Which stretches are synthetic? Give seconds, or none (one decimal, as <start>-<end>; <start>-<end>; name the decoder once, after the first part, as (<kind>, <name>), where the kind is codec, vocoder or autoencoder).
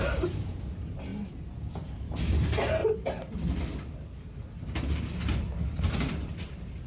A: 0.0-1.1 (vocoder, BigVGAN v2); 1.7-2.8; 5.6-6.9